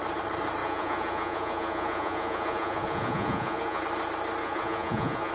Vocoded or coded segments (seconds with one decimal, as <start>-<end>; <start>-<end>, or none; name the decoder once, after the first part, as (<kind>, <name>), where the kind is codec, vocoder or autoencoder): 0.6-3.8 (vocoder, Vocos); 4.4-5.3